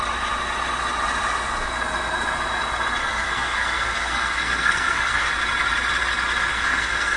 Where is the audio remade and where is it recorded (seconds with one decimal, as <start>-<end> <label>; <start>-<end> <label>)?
0.0-3.0 recorded; 3.0-5.3 remade; 5.3-6.5 recorded; 6.5-7.2 remade